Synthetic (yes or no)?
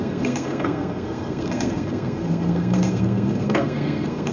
yes